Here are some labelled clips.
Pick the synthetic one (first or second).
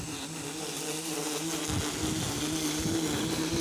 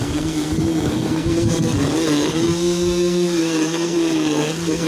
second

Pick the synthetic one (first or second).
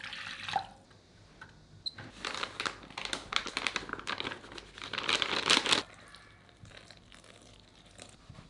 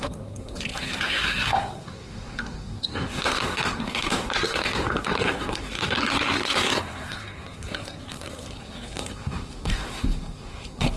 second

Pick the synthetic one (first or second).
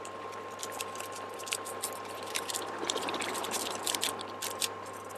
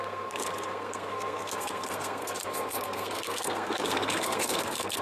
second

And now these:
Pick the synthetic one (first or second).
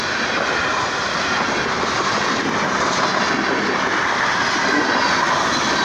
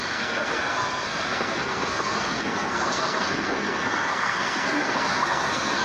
second